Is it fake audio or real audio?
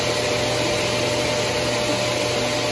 real